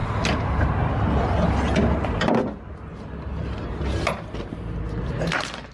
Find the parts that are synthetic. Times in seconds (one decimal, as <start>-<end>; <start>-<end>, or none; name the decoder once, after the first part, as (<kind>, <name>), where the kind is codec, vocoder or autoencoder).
2.9-3.4 (vocoder, BigVGAN v2); 5.0-5.7